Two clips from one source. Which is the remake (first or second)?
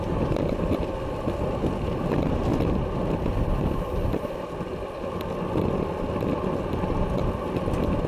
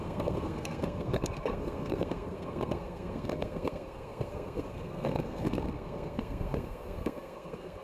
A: second